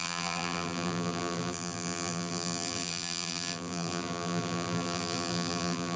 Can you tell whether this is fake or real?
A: fake